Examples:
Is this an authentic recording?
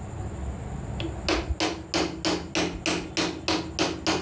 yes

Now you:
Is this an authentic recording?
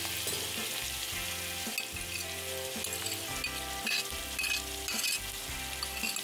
yes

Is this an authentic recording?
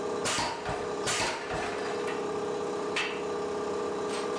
yes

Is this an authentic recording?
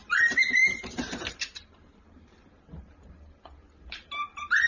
no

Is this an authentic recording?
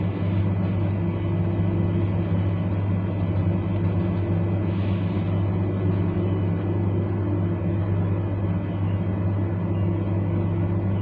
yes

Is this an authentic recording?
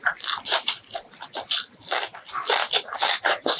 no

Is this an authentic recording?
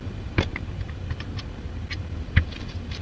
no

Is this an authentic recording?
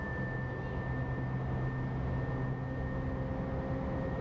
yes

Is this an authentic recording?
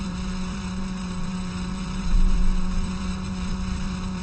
no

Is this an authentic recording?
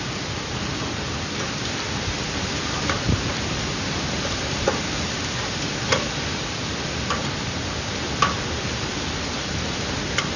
no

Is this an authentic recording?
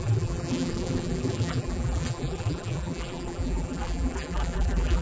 no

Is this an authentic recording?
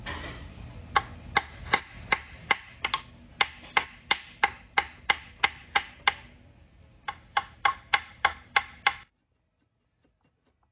yes